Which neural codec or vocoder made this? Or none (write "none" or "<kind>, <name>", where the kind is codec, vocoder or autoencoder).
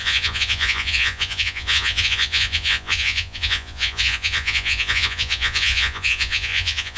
vocoder, Vocos